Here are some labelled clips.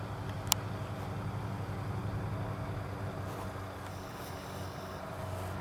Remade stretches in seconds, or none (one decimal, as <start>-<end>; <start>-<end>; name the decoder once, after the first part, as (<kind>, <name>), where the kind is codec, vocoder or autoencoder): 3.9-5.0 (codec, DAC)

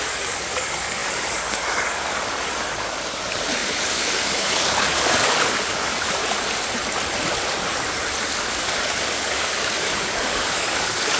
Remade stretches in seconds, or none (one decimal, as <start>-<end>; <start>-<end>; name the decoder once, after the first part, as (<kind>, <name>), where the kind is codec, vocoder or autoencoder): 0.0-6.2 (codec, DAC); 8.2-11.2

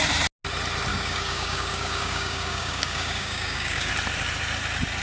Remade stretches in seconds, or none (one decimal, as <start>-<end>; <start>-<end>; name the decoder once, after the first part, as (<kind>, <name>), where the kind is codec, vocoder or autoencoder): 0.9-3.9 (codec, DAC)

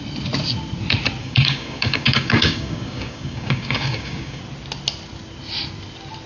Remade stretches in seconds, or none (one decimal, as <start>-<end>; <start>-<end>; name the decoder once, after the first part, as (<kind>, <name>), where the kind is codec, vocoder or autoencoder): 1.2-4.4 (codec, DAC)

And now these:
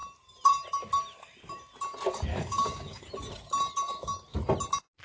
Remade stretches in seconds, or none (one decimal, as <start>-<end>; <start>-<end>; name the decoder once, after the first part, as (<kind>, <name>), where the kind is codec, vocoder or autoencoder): 2.3-3.1 (codec, DAC)

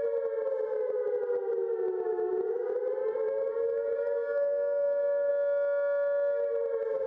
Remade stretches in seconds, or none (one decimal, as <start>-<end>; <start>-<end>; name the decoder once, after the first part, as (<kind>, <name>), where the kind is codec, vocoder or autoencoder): 3.0-5.3 (codec, DAC)

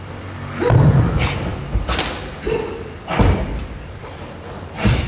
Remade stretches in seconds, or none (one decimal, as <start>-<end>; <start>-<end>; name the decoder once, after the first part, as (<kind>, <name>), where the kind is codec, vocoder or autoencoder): none